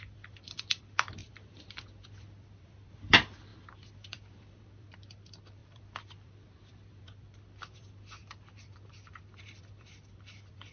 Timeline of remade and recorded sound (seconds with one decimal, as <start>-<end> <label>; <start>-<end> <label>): 0.0-10.7 remade